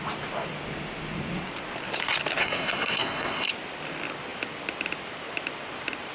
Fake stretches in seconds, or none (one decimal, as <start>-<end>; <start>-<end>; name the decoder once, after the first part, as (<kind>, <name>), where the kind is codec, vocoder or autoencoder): 2.4-3.5 (codec, SNAC)